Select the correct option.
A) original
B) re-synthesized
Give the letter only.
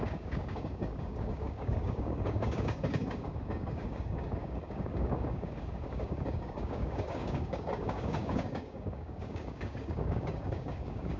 B